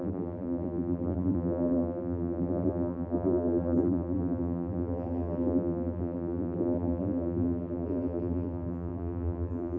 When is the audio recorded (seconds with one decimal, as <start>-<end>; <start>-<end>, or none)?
none